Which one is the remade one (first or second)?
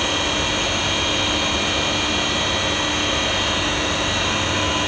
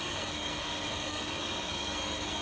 second